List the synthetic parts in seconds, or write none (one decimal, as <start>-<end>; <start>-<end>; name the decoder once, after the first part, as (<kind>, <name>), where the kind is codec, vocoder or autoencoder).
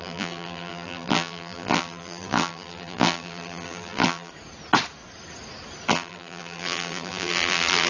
0.0-4.3 (vocoder, BigVGAN v2); 5.9-7.9